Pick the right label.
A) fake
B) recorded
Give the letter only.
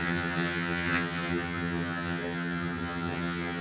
A